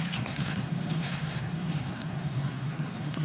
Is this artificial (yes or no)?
yes